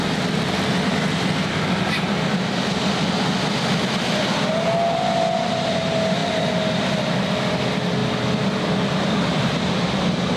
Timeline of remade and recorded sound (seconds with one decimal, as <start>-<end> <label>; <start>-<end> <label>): 0.0-8.0 recorded; 8.0-9.7 remade; 9.7-10.4 recorded